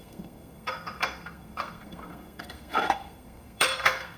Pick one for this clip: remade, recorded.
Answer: remade